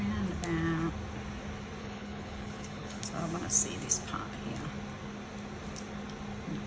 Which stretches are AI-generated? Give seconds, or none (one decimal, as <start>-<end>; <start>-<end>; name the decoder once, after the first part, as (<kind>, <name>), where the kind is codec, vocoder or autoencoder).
1.8-3.0 (codec, HILCodec)